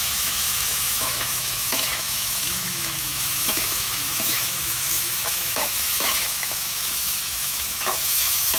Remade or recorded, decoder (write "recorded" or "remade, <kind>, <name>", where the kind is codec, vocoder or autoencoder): remade, autoencoder, DAC-VAE